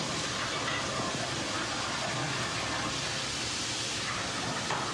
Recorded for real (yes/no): yes